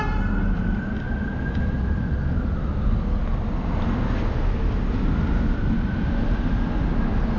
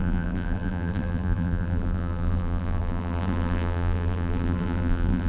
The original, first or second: first